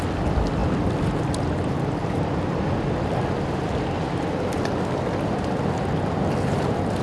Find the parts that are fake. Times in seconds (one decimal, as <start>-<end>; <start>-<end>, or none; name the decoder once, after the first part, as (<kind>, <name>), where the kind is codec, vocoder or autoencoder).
none